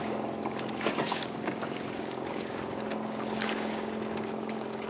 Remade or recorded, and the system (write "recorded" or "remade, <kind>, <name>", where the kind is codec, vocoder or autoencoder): remade, codec, DAC